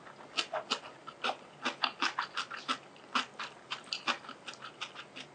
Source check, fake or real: real